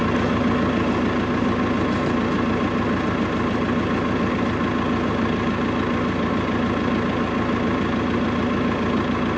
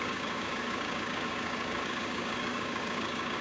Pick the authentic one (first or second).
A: first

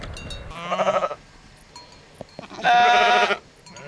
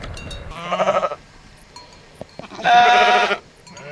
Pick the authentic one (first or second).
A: first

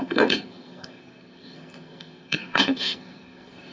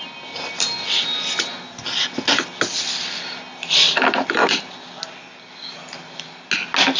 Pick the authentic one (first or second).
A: second